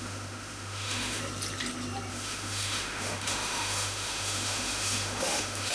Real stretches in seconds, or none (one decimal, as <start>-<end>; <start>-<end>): 1.2-2.1